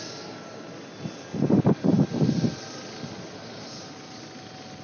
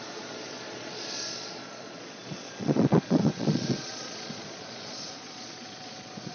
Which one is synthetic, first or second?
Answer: second